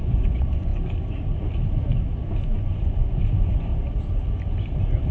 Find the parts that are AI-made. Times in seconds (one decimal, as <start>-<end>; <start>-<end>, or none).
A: 0.0-0.7; 2.4-3.7

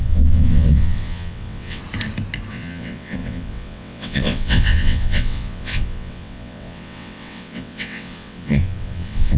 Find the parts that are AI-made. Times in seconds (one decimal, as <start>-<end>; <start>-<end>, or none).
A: 0.0-1.8; 2.5-9.4